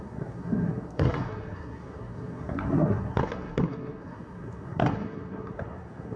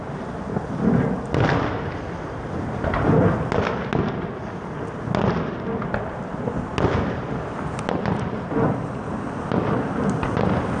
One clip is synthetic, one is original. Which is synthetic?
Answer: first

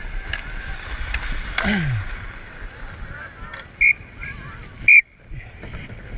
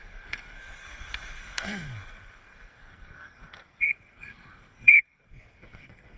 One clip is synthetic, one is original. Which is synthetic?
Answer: second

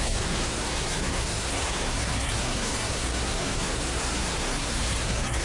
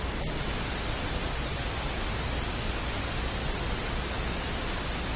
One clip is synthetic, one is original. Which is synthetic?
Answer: first